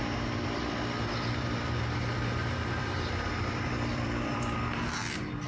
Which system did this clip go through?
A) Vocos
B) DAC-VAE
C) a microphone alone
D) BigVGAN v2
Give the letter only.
D